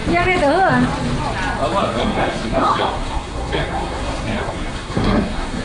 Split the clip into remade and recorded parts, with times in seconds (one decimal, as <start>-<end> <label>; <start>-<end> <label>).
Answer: 0.0-1.8 recorded; 1.8-5.6 remade